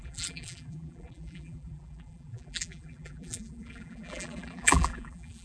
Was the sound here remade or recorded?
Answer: remade